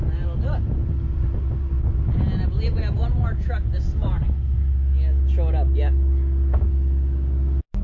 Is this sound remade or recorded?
recorded